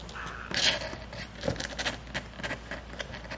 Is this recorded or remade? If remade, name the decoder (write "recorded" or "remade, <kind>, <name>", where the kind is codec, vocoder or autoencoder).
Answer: recorded